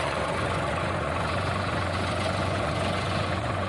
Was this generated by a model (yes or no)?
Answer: yes